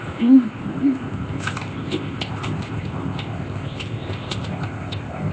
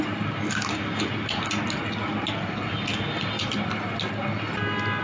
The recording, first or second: second